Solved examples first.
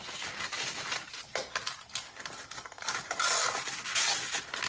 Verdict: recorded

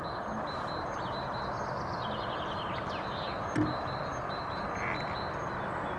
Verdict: recorded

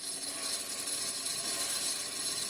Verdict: recorded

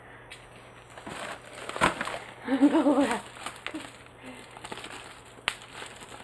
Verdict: recorded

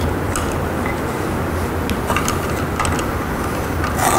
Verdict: recorded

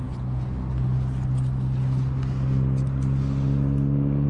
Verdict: recorded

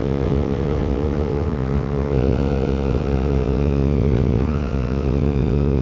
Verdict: remade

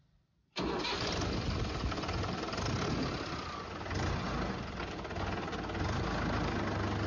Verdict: recorded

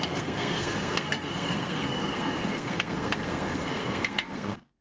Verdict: remade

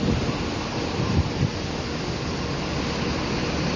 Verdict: recorded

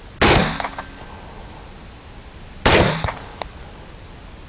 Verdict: recorded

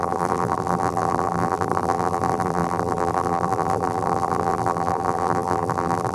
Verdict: remade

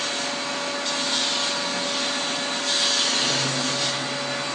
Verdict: recorded